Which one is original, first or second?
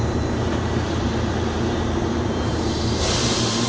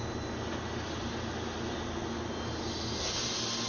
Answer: second